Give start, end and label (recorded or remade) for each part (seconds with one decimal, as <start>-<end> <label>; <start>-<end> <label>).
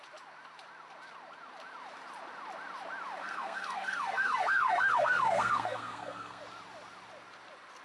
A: 0.0-3.2 recorded; 3.2-6.4 remade; 6.4-7.8 recorded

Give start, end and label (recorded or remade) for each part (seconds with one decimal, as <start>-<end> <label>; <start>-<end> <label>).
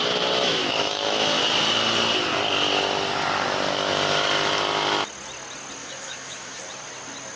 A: 0.0-0.4 recorded; 0.4-1.4 remade; 1.4-5.8 recorded; 5.8-6.6 remade; 6.6-7.4 recorded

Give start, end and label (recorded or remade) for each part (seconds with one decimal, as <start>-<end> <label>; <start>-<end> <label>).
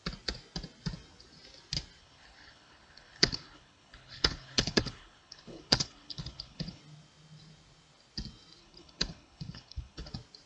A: 0.0-2.0 recorded; 2.0-6.8 remade; 6.8-8.6 recorded; 8.6-10.1 remade; 10.1-10.5 recorded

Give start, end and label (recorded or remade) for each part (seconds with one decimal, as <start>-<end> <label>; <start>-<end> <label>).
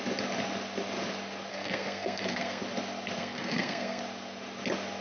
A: 0.0-1.5 recorded; 1.5-2.6 remade; 2.6-3.2 recorded; 3.2-4.0 remade; 4.0-5.0 recorded